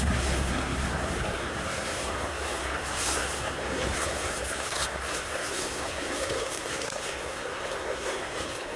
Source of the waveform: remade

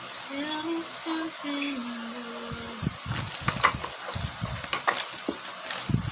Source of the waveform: recorded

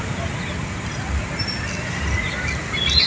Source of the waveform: recorded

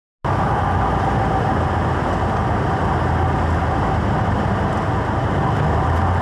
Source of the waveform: recorded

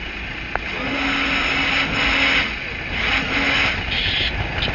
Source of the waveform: recorded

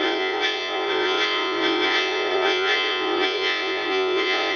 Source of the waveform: remade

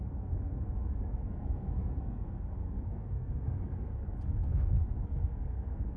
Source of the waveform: remade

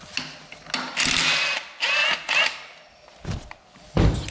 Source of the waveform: recorded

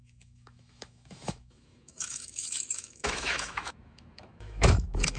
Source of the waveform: remade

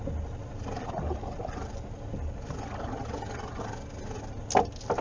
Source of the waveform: recorded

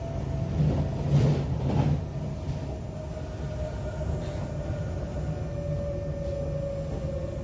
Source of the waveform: recorded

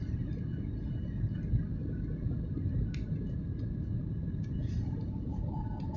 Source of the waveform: recorded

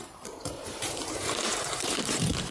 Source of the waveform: remade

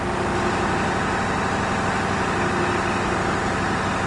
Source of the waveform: recorded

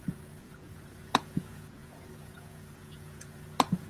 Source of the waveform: remade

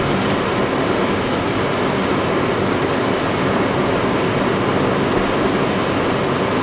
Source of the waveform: recorded